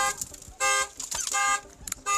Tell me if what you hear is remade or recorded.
recorded